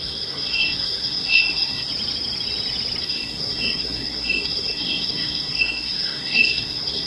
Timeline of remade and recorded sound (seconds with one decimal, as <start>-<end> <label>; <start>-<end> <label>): 0.0-1.9 remade; 1.9-3.0 recorded; 3.0-7.1 remade